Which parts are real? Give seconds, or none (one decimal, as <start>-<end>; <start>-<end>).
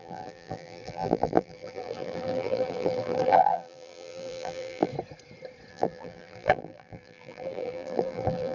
4.9-5.7